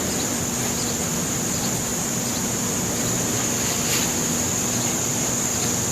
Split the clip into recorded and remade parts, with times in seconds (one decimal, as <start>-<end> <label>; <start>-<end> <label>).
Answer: 0.0-1.9 recorded; 1.9-2.6 remade; 2.6-5.9 recorded

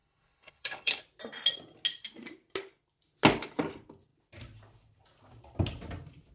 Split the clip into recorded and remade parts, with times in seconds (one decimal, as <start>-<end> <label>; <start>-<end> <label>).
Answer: 0.0-1.0 remade; 1.0-6.3 recorded

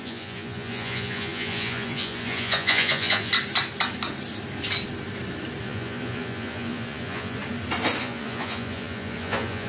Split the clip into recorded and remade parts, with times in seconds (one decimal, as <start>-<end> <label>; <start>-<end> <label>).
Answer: 0.0-3.3 remade; 3.3-5.6 recorded; 5.6-7.4 remade; 7.4-8.0 recorded; 8.0-9.7 remade

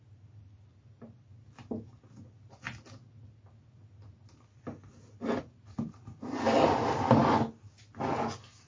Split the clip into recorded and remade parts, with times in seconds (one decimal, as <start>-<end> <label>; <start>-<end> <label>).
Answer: 0.0-8.7 recorded